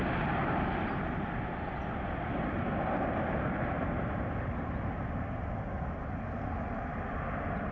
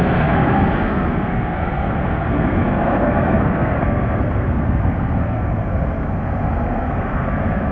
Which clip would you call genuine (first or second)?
first